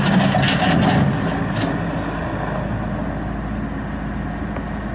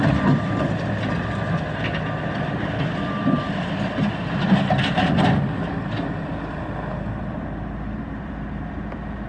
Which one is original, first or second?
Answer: first